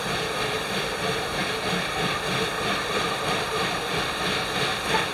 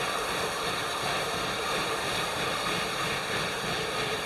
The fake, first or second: second